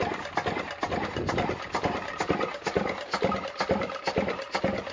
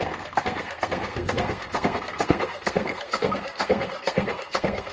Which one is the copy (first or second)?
second